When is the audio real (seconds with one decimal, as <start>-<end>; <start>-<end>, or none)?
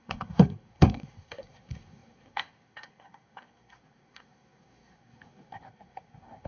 none